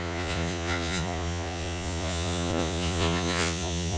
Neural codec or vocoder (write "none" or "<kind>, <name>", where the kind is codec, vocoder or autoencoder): vocoder, Vocos